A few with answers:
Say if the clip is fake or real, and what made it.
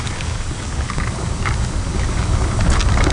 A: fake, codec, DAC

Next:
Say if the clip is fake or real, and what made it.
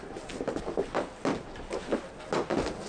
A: real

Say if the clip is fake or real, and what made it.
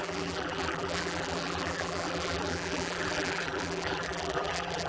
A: fake, vocoder, BigVGAN v2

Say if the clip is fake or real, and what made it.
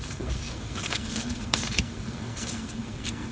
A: fake, codec, SNAC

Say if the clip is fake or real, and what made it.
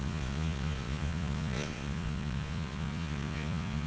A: fake, vocoder, Vocos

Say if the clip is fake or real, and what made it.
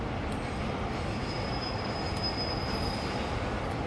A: real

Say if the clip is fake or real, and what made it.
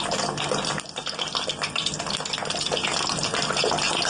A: real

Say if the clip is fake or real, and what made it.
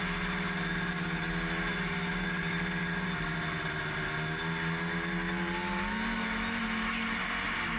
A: real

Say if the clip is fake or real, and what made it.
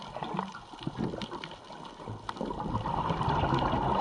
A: real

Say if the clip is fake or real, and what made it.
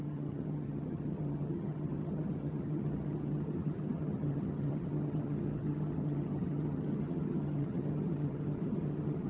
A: fake, vocoder, HiFi-GAN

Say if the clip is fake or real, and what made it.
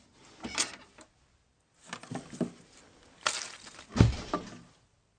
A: real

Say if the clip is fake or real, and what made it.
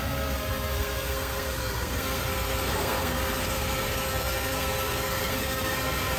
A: fake, codec, SNAC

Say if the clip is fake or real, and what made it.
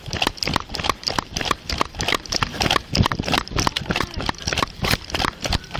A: fake, vocoder, BigVGAN v2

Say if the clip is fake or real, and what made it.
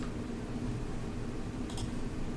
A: real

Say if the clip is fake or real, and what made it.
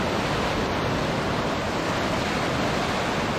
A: real